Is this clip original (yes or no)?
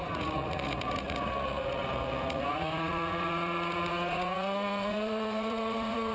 no